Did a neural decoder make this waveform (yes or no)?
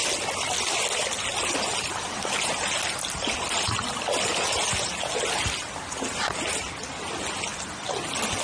no